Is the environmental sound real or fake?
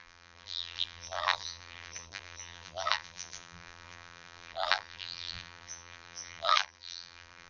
fake